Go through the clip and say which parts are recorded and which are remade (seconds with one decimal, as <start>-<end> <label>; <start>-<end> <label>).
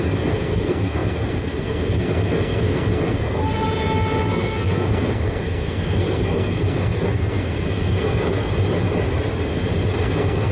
0.0-3.4 remade; 3.4-4.3 recorded; 4.3-8.5 remade; 8.5-10.0 recorded; 10.0-10.5 remade